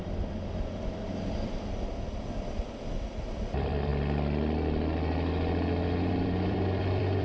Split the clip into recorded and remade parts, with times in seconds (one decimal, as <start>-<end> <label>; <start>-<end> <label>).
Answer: 0.0-3.9 remade; 3.9-6.1 recorded; 6.1-7.2 remade